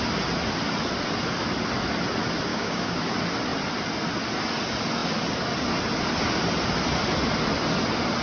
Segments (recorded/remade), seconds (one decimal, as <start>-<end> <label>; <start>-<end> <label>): 0.0-2.5 recorded; 2.5-3.0 remade; 3.0-8.2 recorded